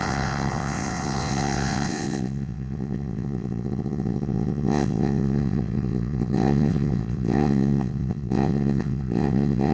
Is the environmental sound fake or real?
fake